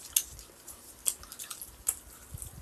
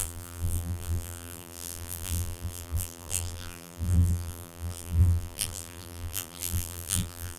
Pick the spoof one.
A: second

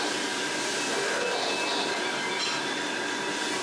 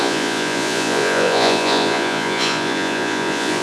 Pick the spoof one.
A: second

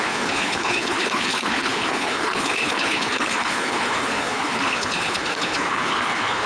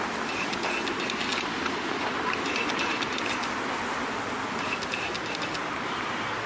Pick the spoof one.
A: first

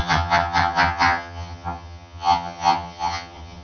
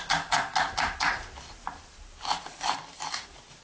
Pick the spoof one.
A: first